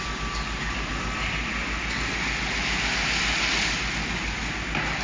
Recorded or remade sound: recorded